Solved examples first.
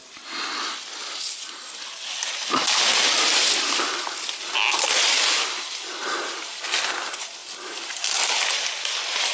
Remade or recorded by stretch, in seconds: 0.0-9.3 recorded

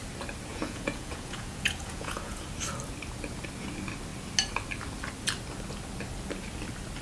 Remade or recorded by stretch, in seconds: 0.0-0.5 recorded; 0.5-2.4 remade; 2.4-7.0 recorded

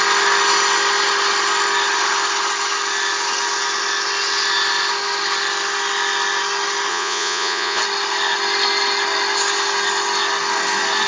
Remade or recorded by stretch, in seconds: 0.0-6.9 recorded; 6.9-7.8 remade; 7.8-11.1 recorded